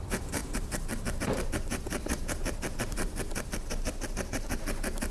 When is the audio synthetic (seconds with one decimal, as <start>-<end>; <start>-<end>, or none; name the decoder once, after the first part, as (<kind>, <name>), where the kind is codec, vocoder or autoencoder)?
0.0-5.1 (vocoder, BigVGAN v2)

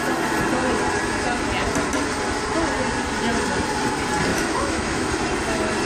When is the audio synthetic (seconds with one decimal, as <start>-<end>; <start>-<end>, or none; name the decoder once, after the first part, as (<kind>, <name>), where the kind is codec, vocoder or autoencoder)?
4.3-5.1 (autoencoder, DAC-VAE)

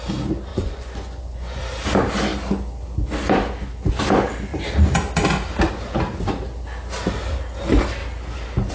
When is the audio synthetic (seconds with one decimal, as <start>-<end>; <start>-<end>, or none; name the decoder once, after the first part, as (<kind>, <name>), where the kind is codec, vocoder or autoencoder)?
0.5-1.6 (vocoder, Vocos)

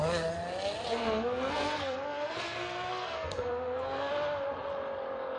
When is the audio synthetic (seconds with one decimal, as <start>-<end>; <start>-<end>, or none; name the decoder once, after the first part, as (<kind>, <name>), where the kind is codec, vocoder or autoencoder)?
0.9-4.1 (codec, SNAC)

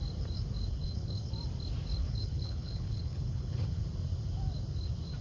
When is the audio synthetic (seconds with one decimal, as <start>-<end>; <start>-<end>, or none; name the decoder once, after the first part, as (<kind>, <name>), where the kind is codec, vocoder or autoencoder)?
0.7-1.3 (codec, HILCodec); 2.0-3.8